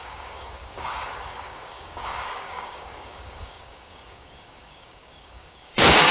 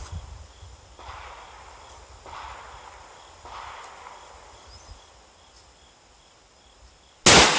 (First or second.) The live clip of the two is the second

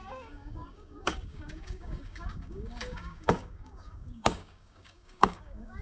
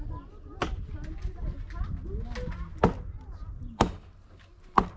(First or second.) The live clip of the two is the second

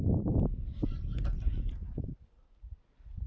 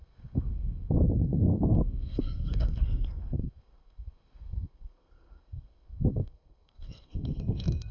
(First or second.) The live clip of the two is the first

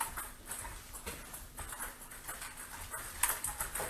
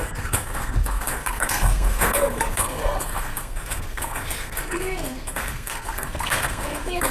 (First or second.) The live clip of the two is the first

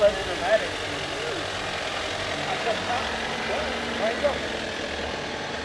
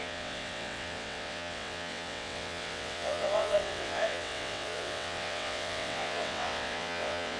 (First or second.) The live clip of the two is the first